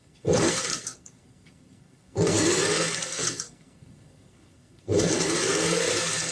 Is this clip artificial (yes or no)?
yes